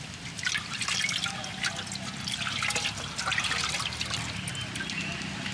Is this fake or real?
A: real